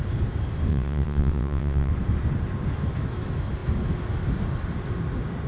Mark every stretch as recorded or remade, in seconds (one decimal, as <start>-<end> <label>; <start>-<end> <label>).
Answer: 0.0-0.7 recorded; 0.7-1.9 remade; 1.9-5.5 recorded